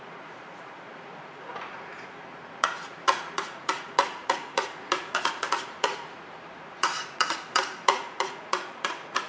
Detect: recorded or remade remade